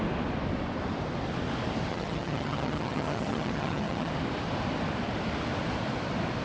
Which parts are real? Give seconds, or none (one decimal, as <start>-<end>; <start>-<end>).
0.0-1.9; 4.1-6.4